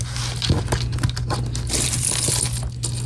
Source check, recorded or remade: recorded